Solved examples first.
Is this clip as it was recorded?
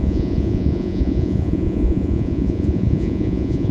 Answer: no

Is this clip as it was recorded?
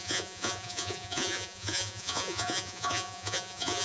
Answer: no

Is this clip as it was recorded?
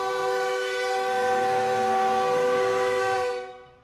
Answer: no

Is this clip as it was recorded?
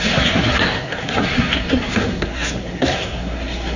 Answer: no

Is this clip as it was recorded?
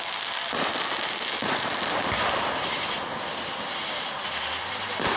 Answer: yes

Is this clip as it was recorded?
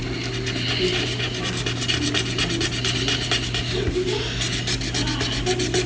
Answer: yes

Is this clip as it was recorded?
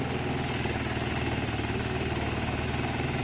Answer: yes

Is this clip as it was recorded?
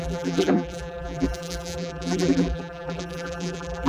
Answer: no